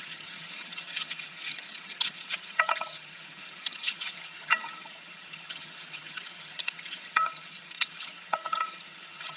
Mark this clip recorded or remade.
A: remade